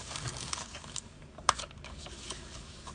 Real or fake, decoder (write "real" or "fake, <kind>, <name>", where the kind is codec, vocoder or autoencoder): fake, codec, DAC